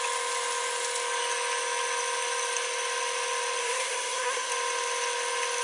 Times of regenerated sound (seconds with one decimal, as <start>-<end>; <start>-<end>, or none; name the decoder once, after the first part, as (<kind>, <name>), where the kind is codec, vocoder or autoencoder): 3.6-4.5 (codec, SNAC)